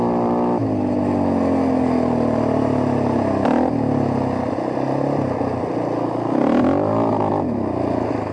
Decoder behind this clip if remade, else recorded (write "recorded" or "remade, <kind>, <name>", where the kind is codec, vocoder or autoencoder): recorded